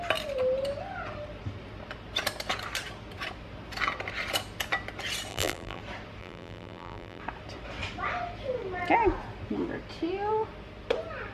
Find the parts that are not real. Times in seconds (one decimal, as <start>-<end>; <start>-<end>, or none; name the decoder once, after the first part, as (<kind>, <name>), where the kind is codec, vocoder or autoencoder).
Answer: 5.3-5.8 (vocoder, BigVGAN v2); 6.2-7.2